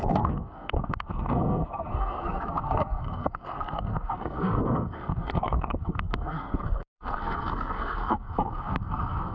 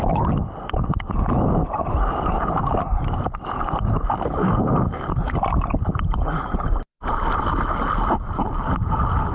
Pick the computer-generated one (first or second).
first